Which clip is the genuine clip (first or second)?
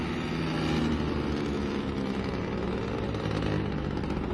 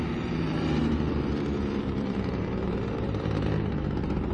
first